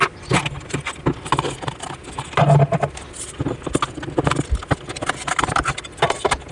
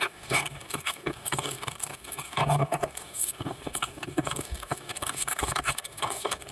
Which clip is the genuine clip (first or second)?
first